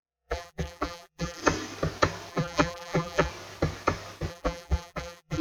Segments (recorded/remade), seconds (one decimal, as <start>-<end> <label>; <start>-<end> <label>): 0.0-1.4 remade; 1.4-2.3 recorded; 2.3-3.3 remade; 3.3-4.3 recorded; 4.3-5.4 remade